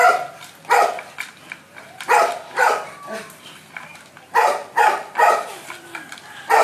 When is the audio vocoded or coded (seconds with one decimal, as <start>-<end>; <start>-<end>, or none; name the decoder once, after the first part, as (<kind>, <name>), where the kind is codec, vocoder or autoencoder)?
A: none